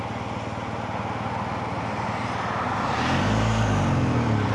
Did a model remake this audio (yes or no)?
no